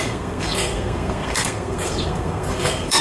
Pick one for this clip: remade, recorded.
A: remade